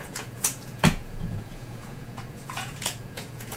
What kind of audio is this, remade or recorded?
remade